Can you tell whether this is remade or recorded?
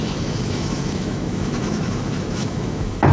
remade